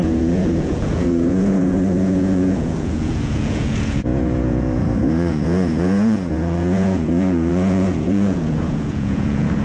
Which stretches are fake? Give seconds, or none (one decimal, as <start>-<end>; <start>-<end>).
0.0-9.6